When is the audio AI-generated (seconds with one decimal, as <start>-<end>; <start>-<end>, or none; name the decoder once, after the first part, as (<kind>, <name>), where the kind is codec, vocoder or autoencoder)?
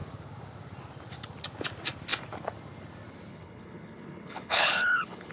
3.3-5.3 (codec, HILCodec)